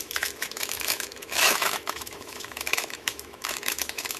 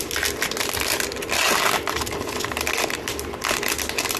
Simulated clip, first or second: first